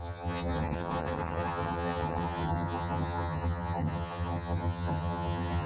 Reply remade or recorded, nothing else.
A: remade